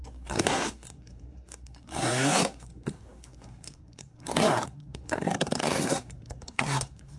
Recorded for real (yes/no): no